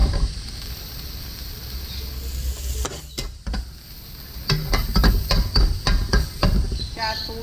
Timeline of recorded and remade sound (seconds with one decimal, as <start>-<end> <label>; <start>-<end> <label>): 0.0-2.0 remade; 2.0-7.4 recorded